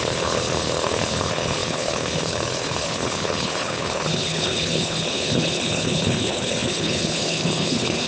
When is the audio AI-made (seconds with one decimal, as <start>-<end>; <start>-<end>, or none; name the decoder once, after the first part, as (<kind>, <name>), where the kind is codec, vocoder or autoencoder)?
0.0-8.1 (codec, HILCodec)